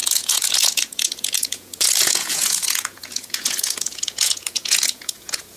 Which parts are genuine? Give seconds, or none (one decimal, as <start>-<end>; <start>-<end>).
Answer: none